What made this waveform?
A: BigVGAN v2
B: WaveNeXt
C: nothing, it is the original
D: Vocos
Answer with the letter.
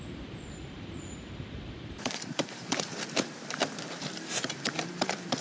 A